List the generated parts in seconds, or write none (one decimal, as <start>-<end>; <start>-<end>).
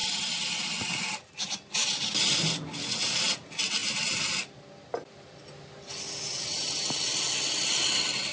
none